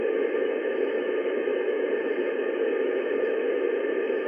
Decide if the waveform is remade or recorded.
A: remade